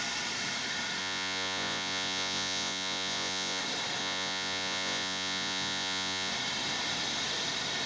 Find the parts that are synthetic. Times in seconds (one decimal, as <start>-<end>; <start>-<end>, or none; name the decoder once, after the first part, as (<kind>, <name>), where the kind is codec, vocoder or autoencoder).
1.0-3.6 (vocoder, Vocos); 4.0-6.3